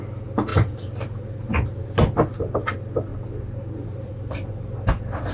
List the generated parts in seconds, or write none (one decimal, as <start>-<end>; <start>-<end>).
none